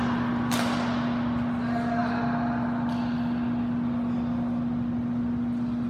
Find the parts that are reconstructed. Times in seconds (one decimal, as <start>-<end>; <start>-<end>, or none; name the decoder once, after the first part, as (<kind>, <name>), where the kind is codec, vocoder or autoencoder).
none